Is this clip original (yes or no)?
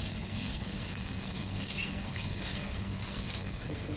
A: no